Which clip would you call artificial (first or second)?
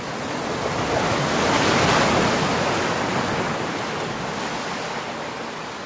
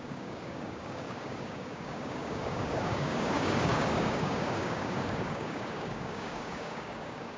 second